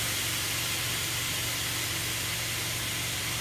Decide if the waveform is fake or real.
real